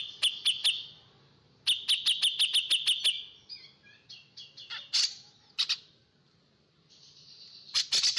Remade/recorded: recorded